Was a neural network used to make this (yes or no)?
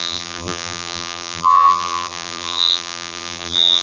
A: yes